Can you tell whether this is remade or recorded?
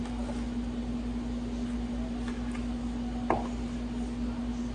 recorded